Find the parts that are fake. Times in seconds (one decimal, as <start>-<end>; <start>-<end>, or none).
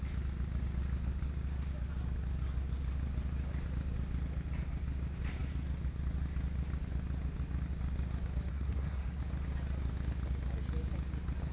8.5-9.2